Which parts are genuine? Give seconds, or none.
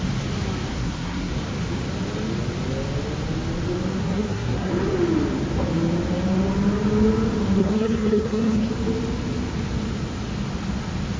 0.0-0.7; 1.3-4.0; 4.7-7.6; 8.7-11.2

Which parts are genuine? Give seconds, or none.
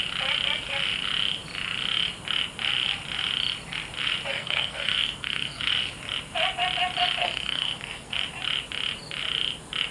0.0-4.3; 5.7-7.2; 8.2-9.9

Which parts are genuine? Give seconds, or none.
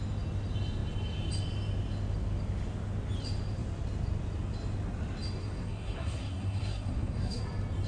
0.0-5.4; 7.4-7.9